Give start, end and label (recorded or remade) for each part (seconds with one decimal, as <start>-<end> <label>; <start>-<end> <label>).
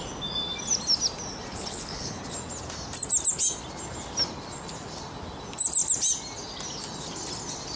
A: 0.0-1.5 recorded; 1.5-2.2 remade; 2.2-7.8 recorded